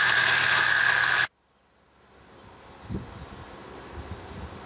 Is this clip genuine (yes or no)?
yes